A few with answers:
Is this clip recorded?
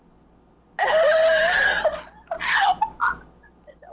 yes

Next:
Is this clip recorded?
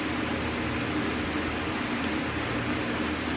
yes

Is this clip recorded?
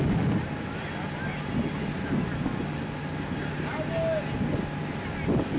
yes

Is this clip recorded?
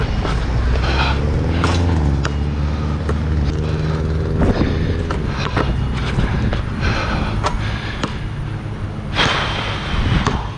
yes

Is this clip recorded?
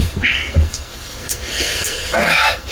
no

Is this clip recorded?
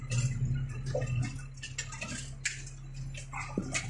yes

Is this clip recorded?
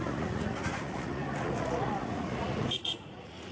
no